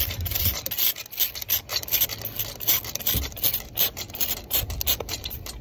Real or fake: real